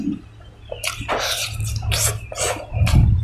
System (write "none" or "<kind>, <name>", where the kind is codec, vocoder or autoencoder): none